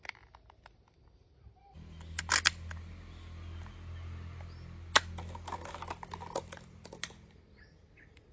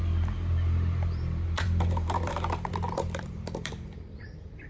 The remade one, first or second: second